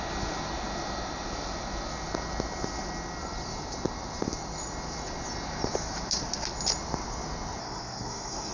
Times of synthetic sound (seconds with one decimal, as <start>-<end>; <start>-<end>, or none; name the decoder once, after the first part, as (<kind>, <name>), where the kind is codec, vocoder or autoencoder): 7.6-8.5 (codec, SNAC)